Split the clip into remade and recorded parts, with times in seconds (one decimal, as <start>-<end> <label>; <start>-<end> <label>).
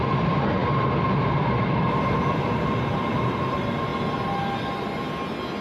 0.0-3.9 remade; 3.9-5.6 recorded